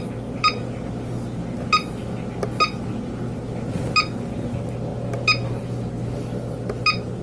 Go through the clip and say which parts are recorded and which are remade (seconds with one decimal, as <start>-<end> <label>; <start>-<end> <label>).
0.0-7.2 recorded